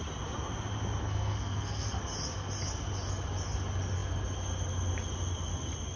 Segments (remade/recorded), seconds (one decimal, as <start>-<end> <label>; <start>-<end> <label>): 0.0-1.0 recorded; 1.0-2.0 remade; 2.0-6.0 recorded